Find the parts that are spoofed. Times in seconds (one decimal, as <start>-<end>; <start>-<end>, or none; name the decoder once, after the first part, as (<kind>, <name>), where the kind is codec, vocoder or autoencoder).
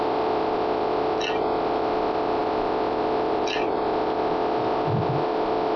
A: none